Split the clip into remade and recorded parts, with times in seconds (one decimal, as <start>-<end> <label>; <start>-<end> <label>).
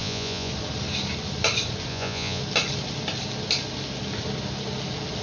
0.0-0.5 remade; 0.5-1.9 recorded; 1.9-2.4 remade; 2.4-5.2 recorded